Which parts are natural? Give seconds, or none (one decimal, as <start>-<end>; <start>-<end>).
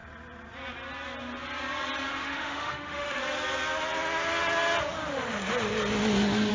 0.0-2.1; 3.2-6.5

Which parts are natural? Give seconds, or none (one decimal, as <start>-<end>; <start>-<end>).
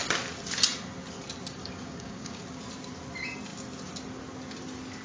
0.0-1.6; 2.4-5.0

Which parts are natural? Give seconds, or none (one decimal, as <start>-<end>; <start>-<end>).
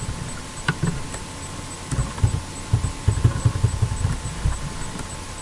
0.0-5.4